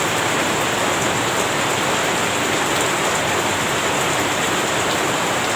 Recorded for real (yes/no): no